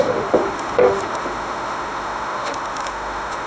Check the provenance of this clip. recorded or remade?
remade